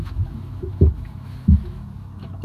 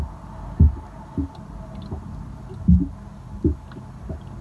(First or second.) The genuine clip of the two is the second